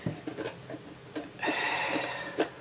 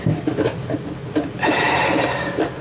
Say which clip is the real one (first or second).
first